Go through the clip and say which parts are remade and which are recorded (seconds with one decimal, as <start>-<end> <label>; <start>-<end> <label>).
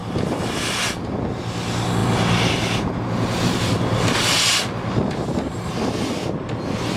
0.0-7.0 recorded